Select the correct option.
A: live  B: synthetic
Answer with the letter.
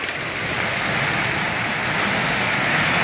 A